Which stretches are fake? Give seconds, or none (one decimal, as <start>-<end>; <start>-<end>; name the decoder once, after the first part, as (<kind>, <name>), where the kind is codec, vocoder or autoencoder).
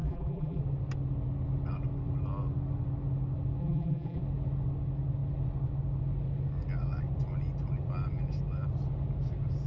0.0-0.6 (vocoder, BigVGAN v2); 3.6-4.2